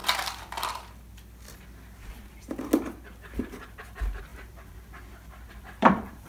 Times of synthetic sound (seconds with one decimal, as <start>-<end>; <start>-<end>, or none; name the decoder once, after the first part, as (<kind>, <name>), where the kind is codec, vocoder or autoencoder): 3.8-4.3 (vocoder, BigVGAN v2); 5.5-6.3